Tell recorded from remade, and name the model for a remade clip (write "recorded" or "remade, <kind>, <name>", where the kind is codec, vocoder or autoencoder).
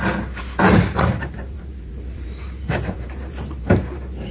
remade, vocoder, BigVGAN v2